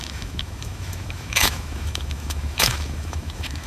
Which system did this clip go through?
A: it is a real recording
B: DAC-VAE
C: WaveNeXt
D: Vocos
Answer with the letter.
B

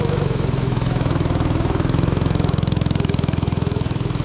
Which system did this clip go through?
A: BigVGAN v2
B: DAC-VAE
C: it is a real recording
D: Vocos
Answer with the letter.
B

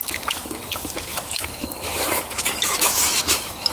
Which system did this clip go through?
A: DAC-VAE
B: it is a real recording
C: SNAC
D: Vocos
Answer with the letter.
A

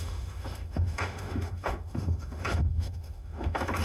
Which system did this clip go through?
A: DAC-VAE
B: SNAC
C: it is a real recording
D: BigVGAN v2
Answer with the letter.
A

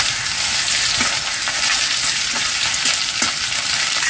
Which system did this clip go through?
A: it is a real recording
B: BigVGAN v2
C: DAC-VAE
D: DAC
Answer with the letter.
A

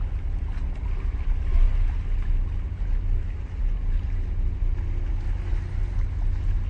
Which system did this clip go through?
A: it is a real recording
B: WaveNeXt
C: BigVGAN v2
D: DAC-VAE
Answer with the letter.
A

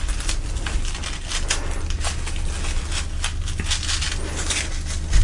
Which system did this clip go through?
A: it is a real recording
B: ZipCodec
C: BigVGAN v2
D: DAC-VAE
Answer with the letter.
A